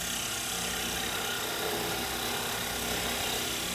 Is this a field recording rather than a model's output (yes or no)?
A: yes